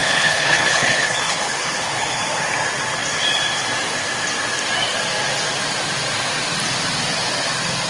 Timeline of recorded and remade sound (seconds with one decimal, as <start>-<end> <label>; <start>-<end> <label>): 0.0-2.2 remade; 2.2-7.9 recorded